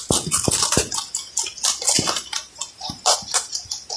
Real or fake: real